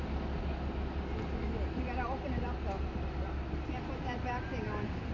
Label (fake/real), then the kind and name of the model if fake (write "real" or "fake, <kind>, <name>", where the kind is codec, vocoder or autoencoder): real